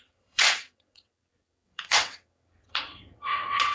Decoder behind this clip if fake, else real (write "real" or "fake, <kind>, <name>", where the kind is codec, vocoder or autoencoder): fake, vocoder, WaveNeXt